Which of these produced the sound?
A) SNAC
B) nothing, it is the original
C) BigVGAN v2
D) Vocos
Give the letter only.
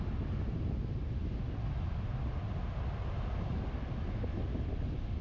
B